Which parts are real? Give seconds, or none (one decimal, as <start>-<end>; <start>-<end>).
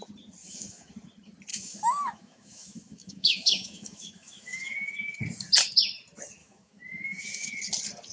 0.0-0.4; 0.9-1.5; 5.2-6.4; 7.5-8.1